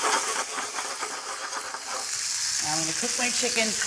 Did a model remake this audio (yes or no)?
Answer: no